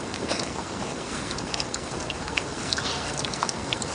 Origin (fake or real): fake